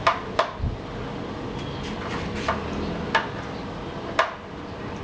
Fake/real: real